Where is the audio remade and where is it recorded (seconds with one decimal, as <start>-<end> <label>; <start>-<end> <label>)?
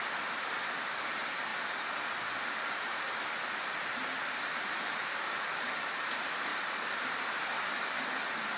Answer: 0.0-1.5 remade; 1.5-2.4 recorded; 2.4-6.5 remade; 6.5-8.6 recorded